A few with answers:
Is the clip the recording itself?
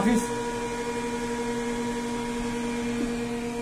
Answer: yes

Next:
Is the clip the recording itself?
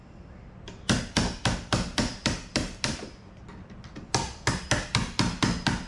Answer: yes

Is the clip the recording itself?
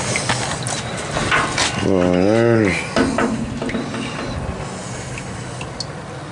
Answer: yes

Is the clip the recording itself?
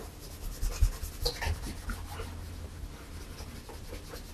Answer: yes